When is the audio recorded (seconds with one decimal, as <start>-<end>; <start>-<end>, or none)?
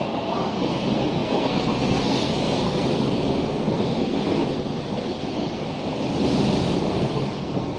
5.8-6.8